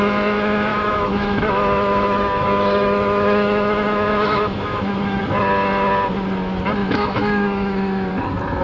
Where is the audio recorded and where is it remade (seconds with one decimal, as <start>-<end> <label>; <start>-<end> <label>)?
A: 0.0-0.7 recorded; 0.7-5.2 remade; 5.2-6.8 recorded; 6.8-8.1 remade; 8.1-8.6 recorded